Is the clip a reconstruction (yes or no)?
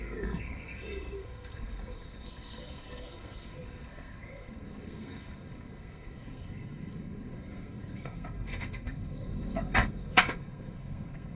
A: yes